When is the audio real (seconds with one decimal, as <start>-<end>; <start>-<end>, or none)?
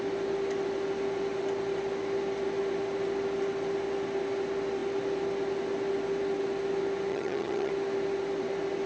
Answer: 0.0-7.1; 7.7-8.9